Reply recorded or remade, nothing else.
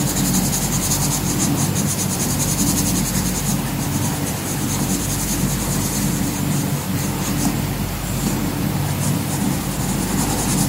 recorded